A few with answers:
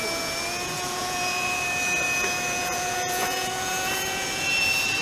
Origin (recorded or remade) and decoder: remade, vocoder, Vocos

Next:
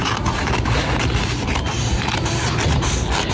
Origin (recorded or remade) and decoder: recorded